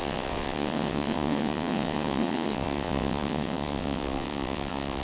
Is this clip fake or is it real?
fake